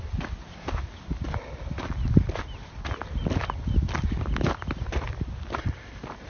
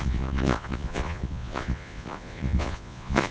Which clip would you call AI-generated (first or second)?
second